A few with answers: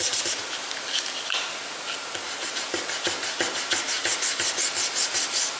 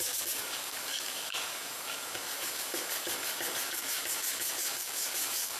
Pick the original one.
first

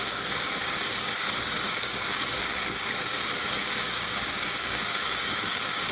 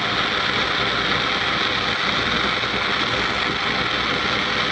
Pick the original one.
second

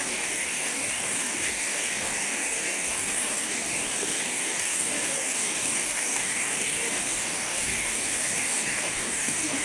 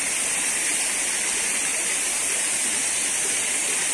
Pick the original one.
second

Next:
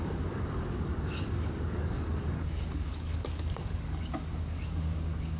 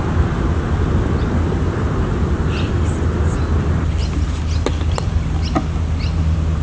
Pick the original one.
second